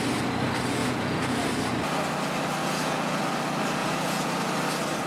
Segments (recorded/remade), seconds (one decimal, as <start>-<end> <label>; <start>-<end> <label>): 0.0-0.8 recorded; 0.8-1.5 remade; 1.5-2.6 recorded; 2.6-3.2 remade; 3.2-3.8 recorded; 3.8-4.3 remade; 4.3-5.1 recorded